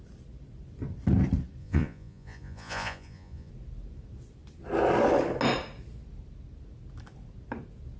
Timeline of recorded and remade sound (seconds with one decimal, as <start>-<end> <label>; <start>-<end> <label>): 0.0-1.6 recorded; 1.6-3.5 remade; 3.5-8.0 recorded